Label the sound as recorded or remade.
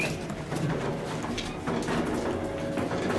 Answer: recorded